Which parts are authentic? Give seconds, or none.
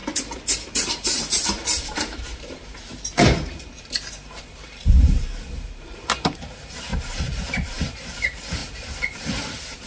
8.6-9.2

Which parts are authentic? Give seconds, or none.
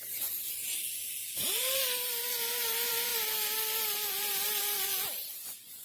3.1-4.1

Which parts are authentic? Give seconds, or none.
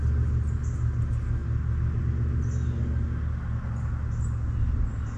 0.0-5.2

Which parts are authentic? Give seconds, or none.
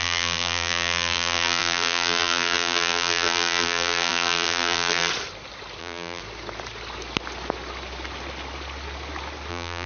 5.1-5.8; 6.2-9.5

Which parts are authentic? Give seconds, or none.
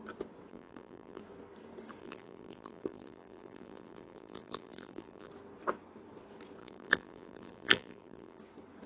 0.0-0.5; 1.2-2.0; 5.3-6.6; 8.4-8.9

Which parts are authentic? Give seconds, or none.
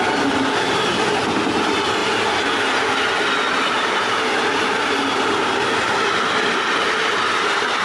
0.0-7.8